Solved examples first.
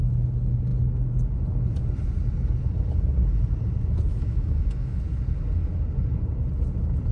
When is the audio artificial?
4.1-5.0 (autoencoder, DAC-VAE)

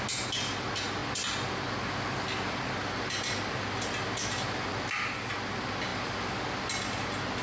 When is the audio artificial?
none

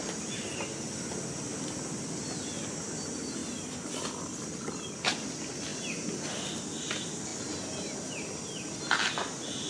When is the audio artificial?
none

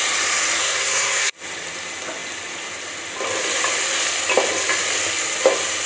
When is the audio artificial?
0.6-1.3 (codec, SNAC)

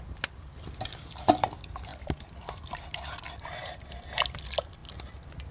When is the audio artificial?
1.9-2.5 (vocoder, BigVGAN v2)